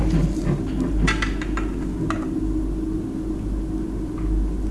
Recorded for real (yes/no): yes